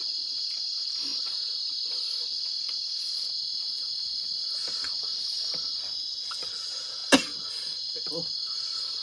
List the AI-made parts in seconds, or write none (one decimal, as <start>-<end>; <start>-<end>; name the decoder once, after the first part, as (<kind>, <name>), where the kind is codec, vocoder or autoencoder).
none